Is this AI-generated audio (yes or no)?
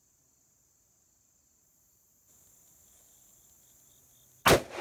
no